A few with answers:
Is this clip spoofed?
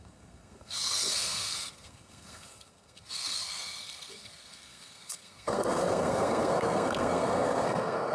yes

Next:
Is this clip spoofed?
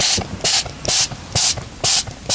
no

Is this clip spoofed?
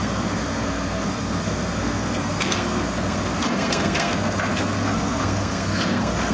yes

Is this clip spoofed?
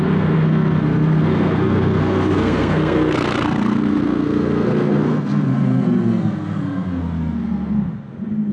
yes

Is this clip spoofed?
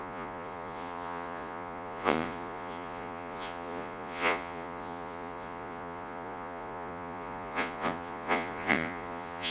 yes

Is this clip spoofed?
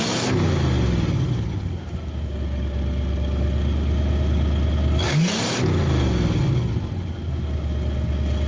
no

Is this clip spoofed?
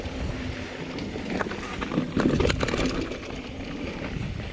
no